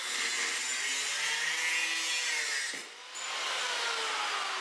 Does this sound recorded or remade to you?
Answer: recorded